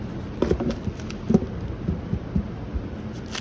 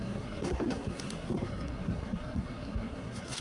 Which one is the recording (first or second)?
first